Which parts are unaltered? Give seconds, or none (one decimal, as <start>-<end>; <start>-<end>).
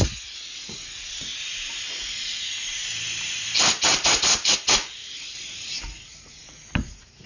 1.3-4.7